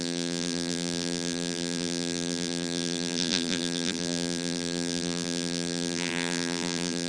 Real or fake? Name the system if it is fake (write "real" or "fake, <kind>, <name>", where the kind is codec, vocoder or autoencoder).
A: fake, vocoder, BigVGAN v2